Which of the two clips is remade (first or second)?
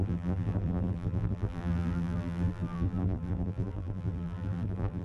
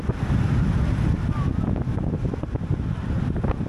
first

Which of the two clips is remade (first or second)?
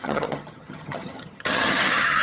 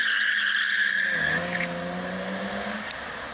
first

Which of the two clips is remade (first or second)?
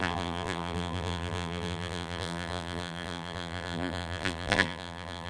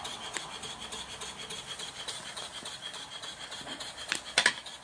first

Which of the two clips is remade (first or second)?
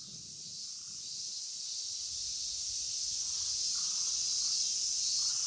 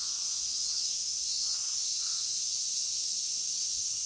second